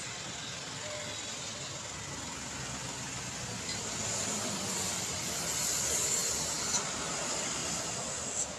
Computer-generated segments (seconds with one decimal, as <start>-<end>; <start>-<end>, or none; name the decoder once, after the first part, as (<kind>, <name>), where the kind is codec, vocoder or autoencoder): none